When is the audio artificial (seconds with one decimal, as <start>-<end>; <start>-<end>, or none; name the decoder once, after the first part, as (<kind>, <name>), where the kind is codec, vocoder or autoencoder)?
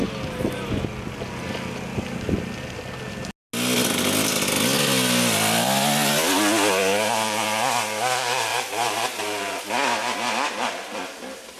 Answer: 8.5-9.6 (vocoder, BigVGAN v2)